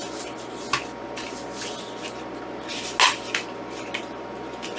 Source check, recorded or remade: recorded